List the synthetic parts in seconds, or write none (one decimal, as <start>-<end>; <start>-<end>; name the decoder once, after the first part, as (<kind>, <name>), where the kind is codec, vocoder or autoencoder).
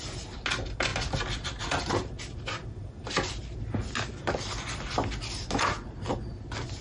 none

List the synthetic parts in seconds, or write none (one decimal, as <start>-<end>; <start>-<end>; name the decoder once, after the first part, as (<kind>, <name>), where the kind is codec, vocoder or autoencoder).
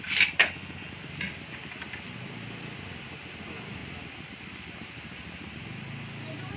0.4-0.9 (codec, HILCodec)